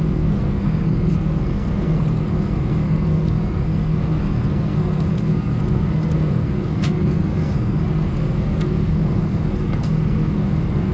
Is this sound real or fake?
fake